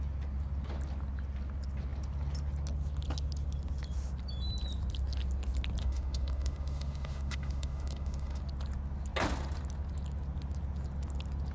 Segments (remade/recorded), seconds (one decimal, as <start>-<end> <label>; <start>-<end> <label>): 0.0-5.8 recorded; 5.8-8.4 remade; 8.4-11.5 recorded